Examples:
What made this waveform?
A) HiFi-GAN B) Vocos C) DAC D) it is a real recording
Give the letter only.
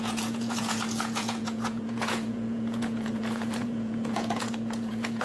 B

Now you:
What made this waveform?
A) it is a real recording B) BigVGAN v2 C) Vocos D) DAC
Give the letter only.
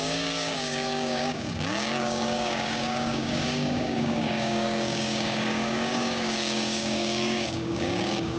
D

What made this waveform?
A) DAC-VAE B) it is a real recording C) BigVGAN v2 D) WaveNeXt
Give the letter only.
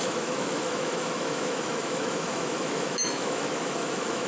A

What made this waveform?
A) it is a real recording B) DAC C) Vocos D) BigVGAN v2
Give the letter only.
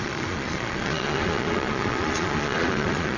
C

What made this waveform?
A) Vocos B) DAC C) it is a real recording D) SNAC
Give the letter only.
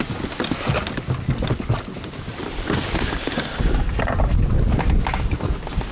C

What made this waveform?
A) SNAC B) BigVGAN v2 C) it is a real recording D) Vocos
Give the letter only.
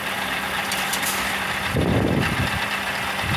B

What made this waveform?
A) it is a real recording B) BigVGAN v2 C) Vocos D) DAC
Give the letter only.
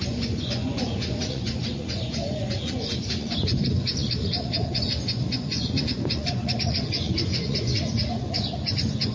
C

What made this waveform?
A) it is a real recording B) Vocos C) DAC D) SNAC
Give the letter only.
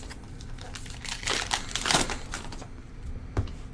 A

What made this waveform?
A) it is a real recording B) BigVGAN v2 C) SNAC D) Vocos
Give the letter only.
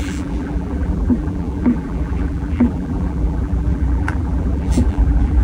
B